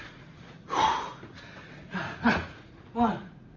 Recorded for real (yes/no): no